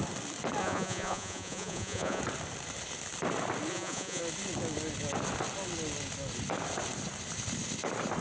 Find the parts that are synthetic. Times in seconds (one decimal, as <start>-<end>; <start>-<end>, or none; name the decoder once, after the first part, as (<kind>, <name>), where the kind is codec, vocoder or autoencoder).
0.6-2.2 (vocoder, Vocos); 3.7-4.2

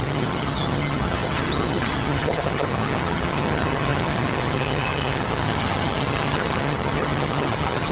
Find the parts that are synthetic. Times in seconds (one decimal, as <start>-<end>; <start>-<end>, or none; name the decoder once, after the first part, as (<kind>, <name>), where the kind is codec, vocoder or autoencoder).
0.0-7.9 (vocoder, HiFi-GAN)

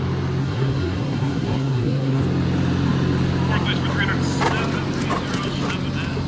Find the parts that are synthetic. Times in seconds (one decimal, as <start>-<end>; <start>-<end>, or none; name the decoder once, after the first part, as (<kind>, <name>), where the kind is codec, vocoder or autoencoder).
0.4-2.2 (codec, SNAC)

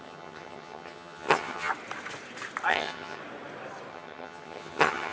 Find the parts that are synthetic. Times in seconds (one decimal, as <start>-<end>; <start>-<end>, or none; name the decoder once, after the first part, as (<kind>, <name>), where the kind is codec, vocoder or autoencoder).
0.0-1.7 (vocoder, HiFi-GAN); 2.7-3.2; 3.9-5.1

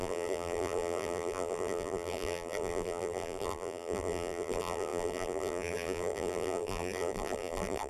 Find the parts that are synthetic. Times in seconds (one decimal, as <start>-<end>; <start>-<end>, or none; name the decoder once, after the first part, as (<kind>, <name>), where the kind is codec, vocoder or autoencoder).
0.0-7.9 (vocoder, BigVGAN v2)

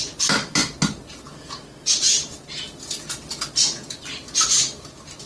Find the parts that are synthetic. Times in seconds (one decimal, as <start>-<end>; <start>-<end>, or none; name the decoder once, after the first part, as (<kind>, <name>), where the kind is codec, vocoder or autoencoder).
none